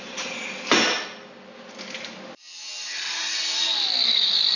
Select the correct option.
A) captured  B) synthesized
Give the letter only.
A